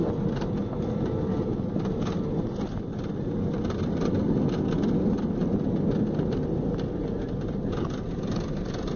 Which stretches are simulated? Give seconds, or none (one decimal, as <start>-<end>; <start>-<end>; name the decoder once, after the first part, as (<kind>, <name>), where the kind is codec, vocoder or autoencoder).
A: none